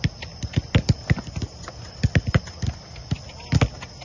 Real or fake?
real